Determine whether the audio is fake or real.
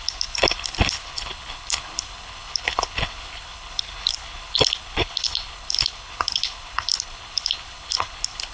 fake